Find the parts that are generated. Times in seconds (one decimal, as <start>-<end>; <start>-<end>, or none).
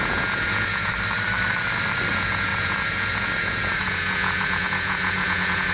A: 0.0-0.9; 2.1-5.7